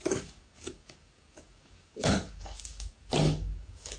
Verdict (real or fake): fake